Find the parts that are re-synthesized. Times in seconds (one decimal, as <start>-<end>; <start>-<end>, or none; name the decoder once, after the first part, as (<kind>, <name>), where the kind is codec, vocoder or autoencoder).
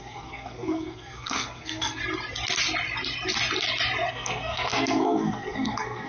0.0-2.0 (codec, SNAC); 4.1-6.1